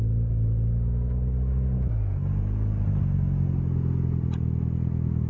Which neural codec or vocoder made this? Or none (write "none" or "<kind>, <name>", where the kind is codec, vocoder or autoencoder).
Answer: none